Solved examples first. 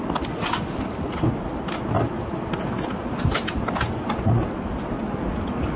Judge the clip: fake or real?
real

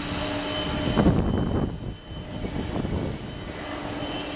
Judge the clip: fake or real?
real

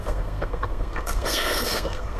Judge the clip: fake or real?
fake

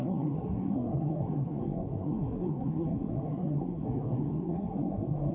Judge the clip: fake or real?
fake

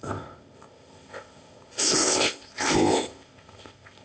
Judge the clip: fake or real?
fake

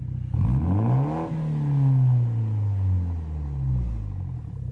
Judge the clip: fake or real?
real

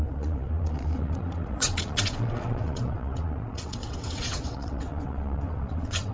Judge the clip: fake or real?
fake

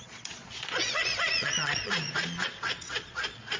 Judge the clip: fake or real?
fake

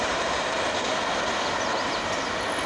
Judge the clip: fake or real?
real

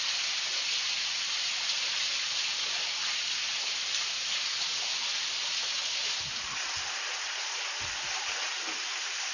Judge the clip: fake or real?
real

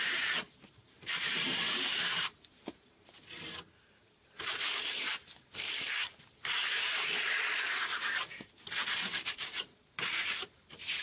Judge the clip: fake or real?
fake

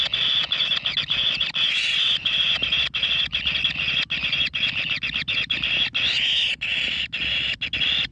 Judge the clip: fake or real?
real